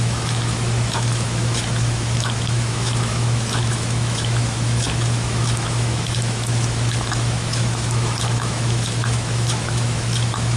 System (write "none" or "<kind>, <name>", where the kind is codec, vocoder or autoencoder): autoencoder, DAC-VAE